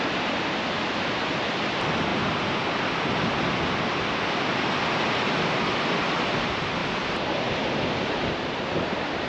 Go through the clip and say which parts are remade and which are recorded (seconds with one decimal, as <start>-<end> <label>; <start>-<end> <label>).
0.0-9.3 recorded